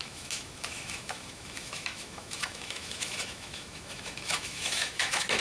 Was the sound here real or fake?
fake